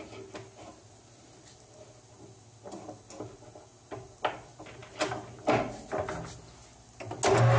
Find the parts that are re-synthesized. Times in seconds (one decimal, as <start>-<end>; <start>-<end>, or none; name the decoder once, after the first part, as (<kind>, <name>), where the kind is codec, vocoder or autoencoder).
none